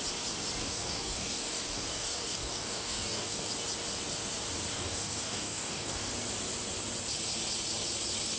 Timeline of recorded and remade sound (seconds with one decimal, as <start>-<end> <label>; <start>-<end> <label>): 0.0-0.6 recorded; 0.6-3.5 remade; 3.5-4.7 recorded; 4.7-6.1 remade; 6.1-8.4 recorded